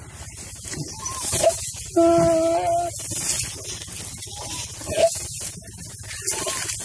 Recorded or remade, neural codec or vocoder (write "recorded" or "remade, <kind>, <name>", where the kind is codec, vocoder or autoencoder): recorded